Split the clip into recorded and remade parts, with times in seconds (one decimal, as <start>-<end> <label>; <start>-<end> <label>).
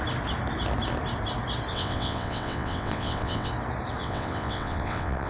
0.0-1.7 recorded; 1.7-3.5 remade; 3.5-4.0 recorded; 4.0-5.3 remade